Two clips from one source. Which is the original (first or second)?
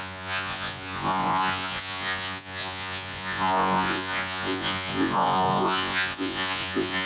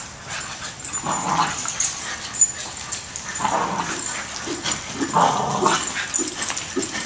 second